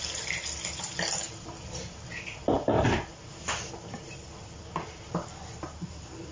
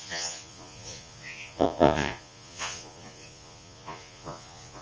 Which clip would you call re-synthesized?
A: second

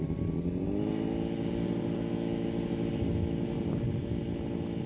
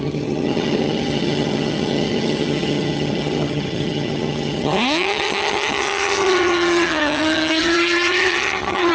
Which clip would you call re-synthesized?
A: second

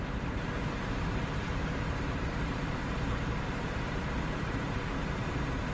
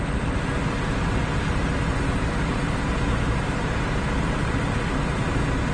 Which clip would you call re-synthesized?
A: first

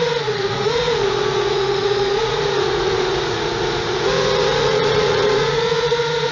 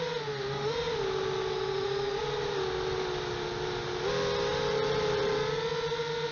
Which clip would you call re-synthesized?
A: first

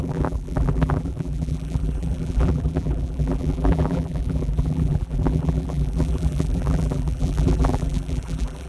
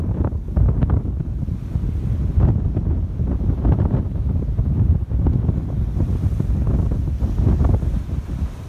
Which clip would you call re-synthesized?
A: first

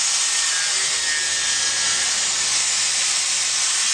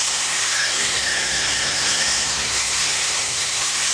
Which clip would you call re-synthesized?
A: second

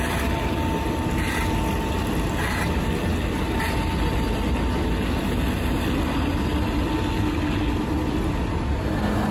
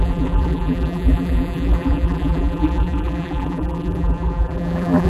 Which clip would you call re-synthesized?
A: second